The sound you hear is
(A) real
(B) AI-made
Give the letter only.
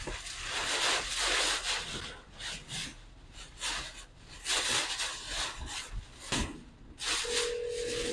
A